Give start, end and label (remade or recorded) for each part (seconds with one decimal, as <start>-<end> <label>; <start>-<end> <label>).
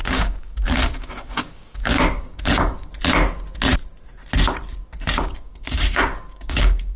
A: 0.0-2.9 remade; 2.9-5.2 recorded; 5.2-7.0 remade